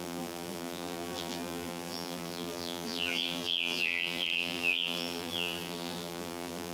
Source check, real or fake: fake